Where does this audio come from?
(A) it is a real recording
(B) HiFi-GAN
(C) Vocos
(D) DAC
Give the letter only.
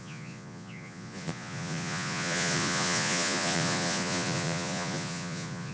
C